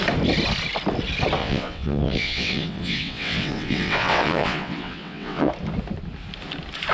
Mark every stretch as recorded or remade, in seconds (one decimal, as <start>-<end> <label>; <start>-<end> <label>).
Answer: 0.0-1.4 recorded; 1.4-5.5 remade; 5.5-6.9 recorded